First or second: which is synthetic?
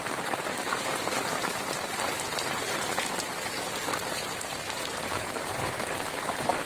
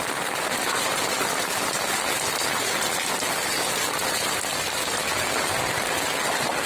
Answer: first